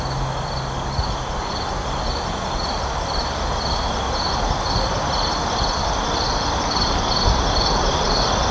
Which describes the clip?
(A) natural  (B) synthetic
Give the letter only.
A